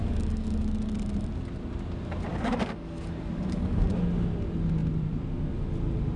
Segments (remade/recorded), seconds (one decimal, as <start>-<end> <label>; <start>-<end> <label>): 0.0-0.9 remade; 0.9-2.3 recorded; 2.3-3.9 remade; 3.9-6.2 recorded